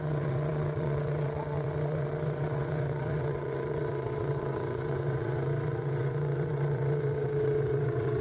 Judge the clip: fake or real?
fake